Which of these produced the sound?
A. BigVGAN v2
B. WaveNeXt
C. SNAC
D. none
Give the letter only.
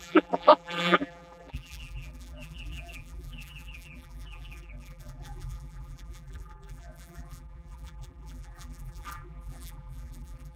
A